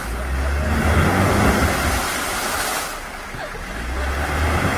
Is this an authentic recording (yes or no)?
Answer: yes